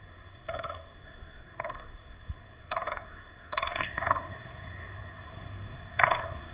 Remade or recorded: remade